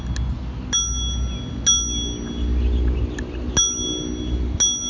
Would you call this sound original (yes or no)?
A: yes